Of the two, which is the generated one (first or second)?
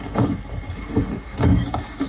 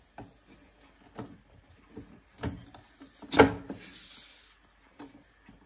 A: first